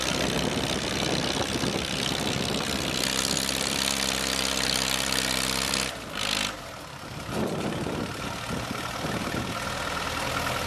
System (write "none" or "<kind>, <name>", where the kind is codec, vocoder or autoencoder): none